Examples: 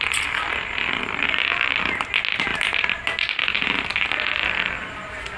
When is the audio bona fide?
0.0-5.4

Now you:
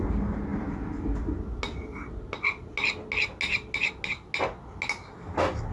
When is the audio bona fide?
0.0-5.7

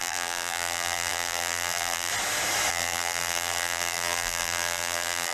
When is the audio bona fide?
2.1-2.7

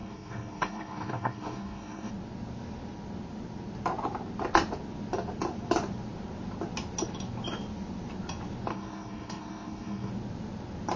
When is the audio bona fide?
2.1-8.7; 10.1-11.0